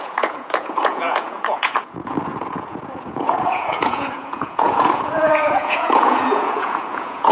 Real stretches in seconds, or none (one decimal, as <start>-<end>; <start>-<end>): none